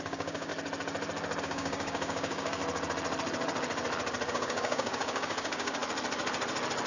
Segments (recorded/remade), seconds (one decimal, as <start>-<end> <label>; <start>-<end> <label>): 0.0-0.5 remade; 0.5-1.4 recorded; 1.4-2.6 remade; 2.6-4.3 recorded; 4.3-5.8 remade; 5.8-6.9 recorded